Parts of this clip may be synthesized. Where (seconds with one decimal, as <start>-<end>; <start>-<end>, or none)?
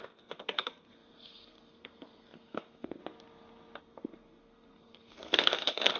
0.0-3.0; 3.8-6.0